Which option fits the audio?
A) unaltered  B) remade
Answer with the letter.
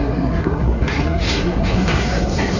B